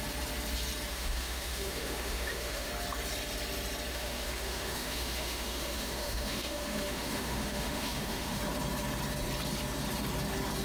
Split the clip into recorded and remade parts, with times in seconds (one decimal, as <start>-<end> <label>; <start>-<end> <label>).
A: 0.0-0.9 recorded; 0.9-2.7 remade; 2.7-3.9 recorded; 3.9-8.4 remade; 8.4-10.6 recorded